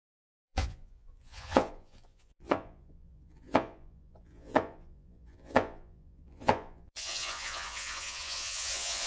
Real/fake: fake